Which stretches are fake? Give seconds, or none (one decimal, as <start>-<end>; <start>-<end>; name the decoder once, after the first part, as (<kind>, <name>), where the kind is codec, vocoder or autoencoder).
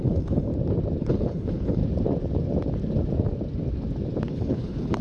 0.0-0.5 (codec, HILCodec); 1.0-1.8; 4.3-5.0